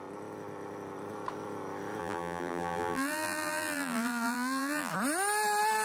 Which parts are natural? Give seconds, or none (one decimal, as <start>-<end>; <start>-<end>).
0.0-2.0; 4.9-5.8